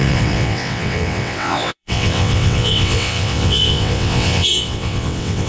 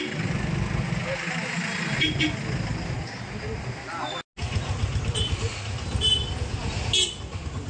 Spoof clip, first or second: first